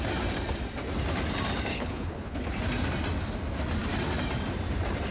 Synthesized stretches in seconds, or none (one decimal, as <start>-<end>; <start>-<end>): 1.7-2.5